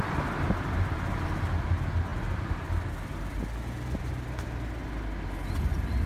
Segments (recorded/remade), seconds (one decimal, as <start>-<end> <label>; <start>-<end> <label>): 0.0-6.1 recorded